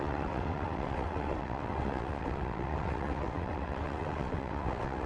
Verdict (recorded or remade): remade